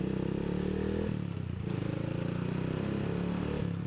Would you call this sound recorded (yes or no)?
yes